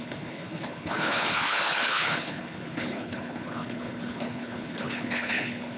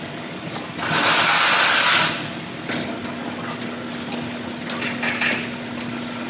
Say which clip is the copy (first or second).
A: first